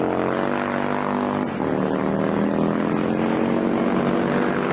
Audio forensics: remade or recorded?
recorded